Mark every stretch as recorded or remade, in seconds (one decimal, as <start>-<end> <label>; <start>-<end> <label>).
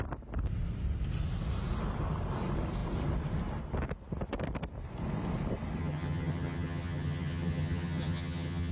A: 0.0-5.8 recorded; 5.8-8.7 remade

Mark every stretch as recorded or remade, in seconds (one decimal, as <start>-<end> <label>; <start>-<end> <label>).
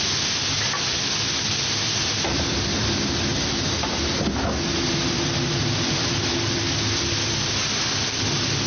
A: 0.0-8.7 recorded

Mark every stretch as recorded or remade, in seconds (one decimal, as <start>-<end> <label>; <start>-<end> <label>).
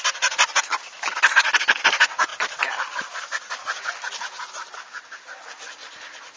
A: 0.0-6.4 recorded